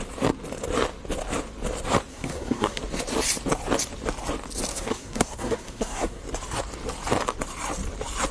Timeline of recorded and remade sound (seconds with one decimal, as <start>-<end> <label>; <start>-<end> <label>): 0.0-2.1 recorded; 2.1-2.8 remade; 2.8-4.7 recorded; 4.7-6.2 remade; 6.2-8.3 recorded